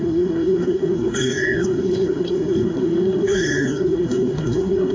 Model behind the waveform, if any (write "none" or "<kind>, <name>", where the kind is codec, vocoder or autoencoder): codec, SNAC